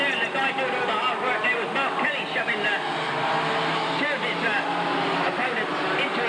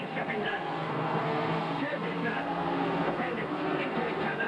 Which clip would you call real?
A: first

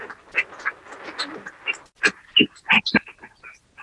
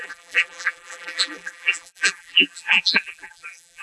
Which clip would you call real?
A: first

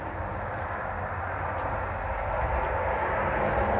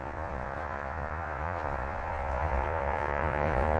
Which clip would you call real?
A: first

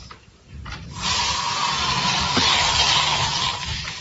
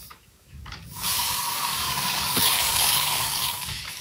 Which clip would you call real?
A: first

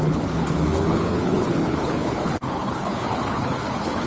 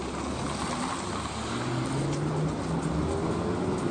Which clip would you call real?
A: second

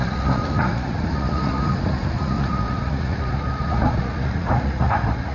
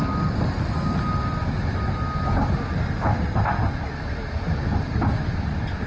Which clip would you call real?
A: second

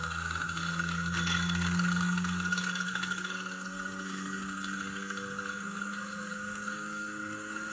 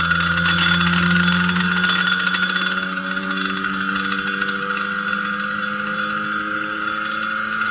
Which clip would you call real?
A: second